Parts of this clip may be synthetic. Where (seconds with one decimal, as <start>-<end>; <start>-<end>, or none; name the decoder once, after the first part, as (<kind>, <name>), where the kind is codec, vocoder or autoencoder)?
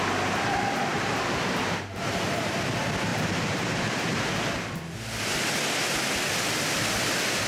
0.9-2.5 (vocoder, BigVGAN v2); 3.1-4.3